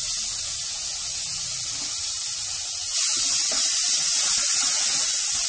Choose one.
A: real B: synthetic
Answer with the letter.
A